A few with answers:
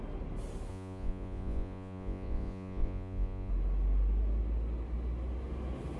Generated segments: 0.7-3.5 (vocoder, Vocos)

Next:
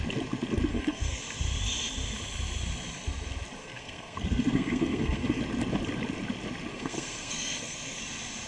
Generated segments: 0.7-1.2 (codec, SNAC); 3.6-5.4; 6.7-8.0

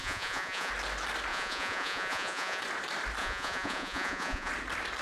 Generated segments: 0.0-0.7 (vocoder, Vocos); 1.3-2.6; 3.2-4.5

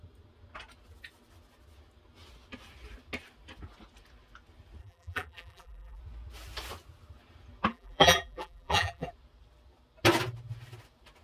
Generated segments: 4.8-6.0 (vocoder, BigVGAN v2); 7.7-9.1

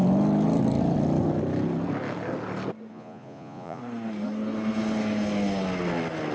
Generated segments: 2.9-3.8 (vocoder, Vocos)

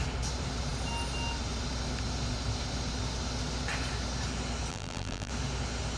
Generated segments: 4.7-5.3 (vocoder, BigVGAN v2)

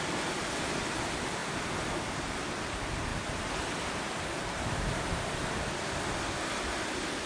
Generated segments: 1.4-2.6 (vocoder, BigVGAN v2); 3.1-6.2

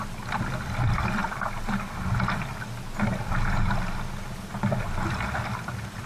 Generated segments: none